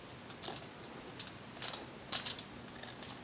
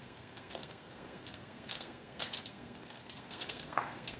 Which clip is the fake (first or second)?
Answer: second